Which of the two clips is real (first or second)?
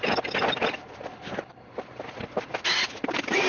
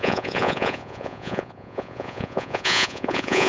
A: first